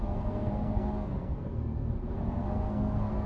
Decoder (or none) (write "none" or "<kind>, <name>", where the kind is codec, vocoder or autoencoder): codec, SNAC